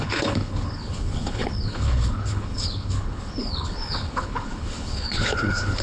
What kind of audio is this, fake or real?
fake